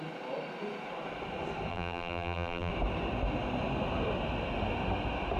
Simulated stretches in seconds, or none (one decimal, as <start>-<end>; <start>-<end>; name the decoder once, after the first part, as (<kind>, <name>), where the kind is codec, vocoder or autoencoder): 1.7-2.7 (vocoder, BigVGAN v2)